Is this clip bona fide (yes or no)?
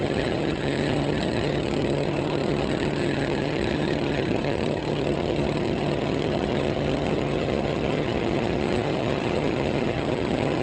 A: no